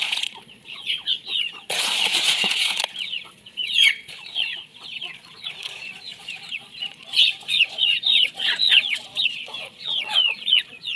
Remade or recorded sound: remade